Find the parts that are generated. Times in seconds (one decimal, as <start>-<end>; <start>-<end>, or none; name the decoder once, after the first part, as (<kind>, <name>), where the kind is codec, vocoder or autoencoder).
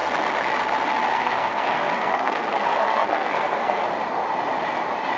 1.1-3.8 (codec, SNAC)